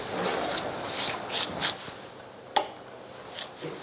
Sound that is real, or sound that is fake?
real